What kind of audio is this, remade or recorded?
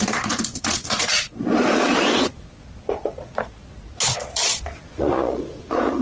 remade